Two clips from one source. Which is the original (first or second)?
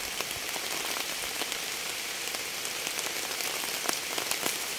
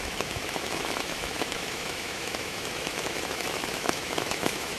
first